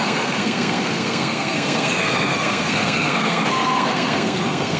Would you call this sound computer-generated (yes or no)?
yes